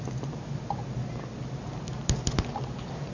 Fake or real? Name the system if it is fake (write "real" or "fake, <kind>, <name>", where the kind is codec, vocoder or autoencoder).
real